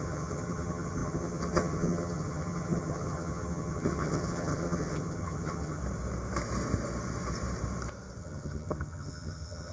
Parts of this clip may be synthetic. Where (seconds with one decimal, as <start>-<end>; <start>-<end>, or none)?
0.0-5.8; 8.2-9.7